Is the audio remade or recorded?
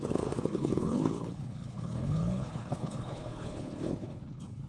remade